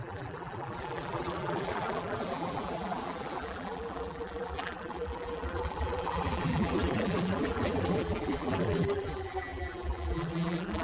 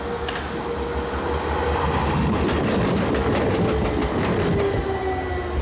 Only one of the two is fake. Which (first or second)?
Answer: first